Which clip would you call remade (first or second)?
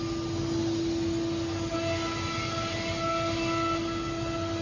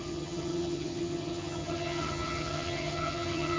second